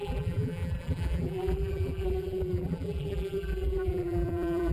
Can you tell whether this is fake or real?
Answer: fake